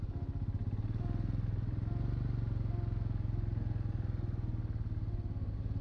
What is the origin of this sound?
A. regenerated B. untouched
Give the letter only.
B